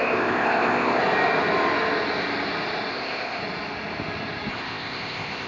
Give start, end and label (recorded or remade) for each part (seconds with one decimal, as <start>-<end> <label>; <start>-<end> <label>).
0.0-1.0 remade; 1.0-2.9 recorded; 2.9-3.4 remade; 3.4-4.5 recorded; 4.5-5.5 remade